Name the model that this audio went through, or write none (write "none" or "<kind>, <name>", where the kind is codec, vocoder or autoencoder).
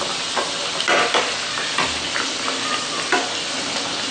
none